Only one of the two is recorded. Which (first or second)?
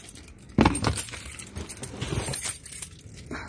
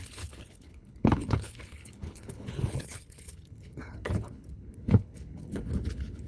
first